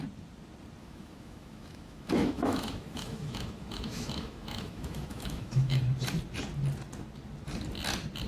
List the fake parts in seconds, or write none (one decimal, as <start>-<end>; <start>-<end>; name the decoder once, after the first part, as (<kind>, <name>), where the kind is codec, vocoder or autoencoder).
0.8-5.8 (autoencoder, DAC-VAE)